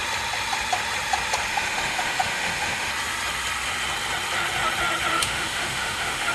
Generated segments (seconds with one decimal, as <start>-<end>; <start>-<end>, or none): 1.5-2.9; 5.1-6.3